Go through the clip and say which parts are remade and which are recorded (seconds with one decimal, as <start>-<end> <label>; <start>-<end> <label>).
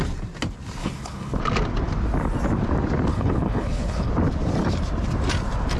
0.0-0.8 recorded; 0.8-1.4 remade; 1.4-3.1 recorded; 3.1-4.1 remade; 4.1-5.8 recorded